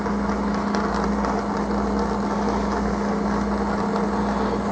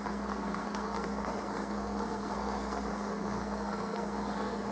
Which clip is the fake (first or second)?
second